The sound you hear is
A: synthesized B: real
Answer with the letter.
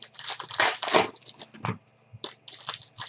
B